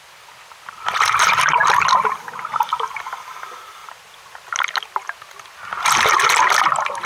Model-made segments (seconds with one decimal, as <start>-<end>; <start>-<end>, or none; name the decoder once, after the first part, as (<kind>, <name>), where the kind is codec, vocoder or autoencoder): none